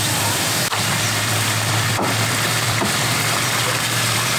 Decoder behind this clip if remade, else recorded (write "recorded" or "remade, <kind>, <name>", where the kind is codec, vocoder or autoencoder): remade, vocoder, BigVGAN v2